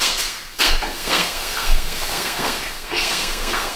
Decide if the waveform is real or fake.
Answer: fake